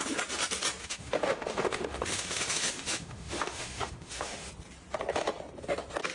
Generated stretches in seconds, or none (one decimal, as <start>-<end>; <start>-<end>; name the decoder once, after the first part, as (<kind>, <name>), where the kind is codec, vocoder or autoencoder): 0.8-4.5 (autoencoder, DAC-VAE)